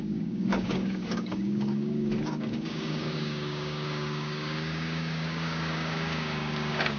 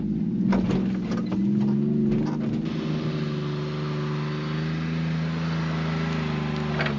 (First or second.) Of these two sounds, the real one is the second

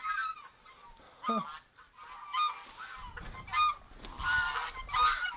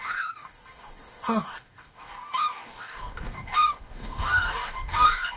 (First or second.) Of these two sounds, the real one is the first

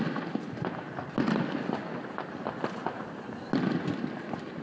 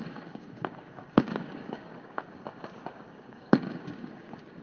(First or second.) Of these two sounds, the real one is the first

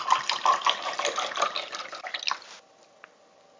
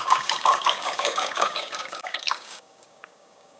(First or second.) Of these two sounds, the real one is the first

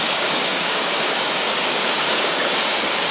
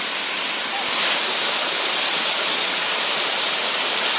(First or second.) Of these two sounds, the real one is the second